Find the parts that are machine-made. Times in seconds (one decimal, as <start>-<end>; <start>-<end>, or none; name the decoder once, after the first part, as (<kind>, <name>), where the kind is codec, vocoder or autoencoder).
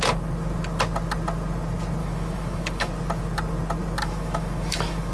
2.0-2.9 (autoencoder, DAC-VAE); 4.0-5.1